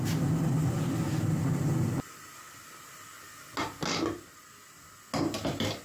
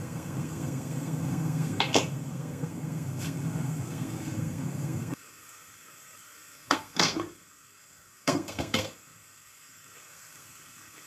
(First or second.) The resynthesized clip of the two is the second